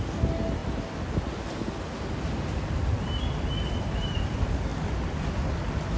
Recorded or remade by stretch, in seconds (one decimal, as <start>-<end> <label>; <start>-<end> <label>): 0.0-4.7 recorded; 4.7-5.3 remade; 5.3-6.0 recorded